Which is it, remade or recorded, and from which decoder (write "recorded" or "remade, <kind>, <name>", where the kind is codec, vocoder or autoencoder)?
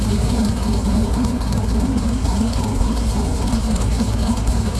remade, codec, SNAC